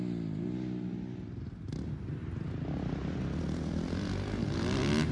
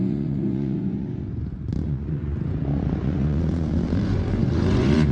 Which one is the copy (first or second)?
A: second